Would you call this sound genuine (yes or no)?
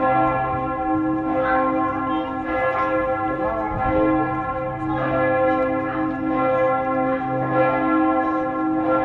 yes